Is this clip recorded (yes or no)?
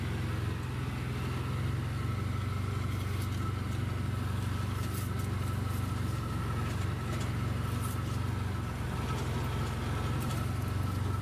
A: yes